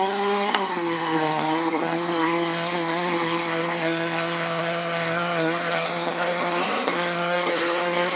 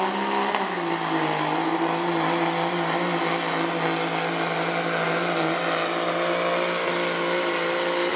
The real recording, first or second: second